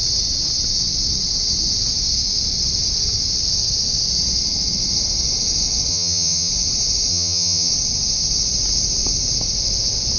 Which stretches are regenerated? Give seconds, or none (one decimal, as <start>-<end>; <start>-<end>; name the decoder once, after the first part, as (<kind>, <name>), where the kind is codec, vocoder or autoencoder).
5.9-6.5 (vocoder, HiFi-GAN); 7.1-7.7